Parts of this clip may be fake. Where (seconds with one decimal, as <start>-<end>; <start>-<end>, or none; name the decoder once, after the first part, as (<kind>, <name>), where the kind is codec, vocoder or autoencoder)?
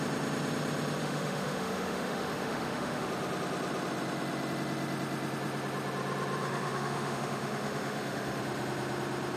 1.0-3.1 (autoencoder, DAC-VAE); 6.4-8.4